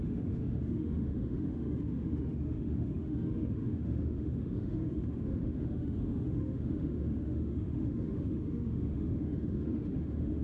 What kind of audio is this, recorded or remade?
remade